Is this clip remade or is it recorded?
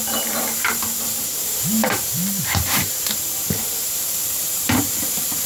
remade